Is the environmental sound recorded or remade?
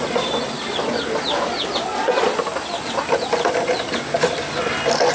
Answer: recorded